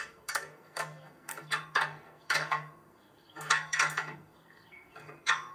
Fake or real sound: fake